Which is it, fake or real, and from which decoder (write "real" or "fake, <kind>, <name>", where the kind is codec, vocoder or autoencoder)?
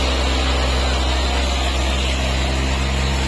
real